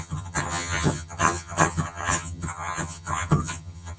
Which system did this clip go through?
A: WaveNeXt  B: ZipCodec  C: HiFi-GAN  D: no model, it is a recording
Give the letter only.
C